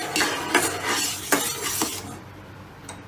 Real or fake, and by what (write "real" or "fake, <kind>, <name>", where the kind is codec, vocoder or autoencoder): real